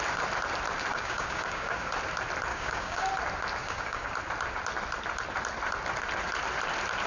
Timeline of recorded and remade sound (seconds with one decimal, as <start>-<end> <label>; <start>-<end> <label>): 0.0-0.9 recorded; 0.9-1.9 remade; 1.9-2.5 recorded; 2.5-3.1 remade; 3.1-3.6 recorded; 3.6-4.1 remade; 4.1-7.1 recorded